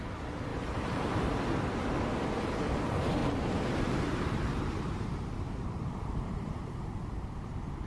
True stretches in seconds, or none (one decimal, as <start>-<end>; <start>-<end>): 0.0-0.5; 1.4-3.2; 6.6-7.9